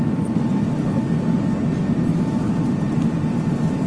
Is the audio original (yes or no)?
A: yes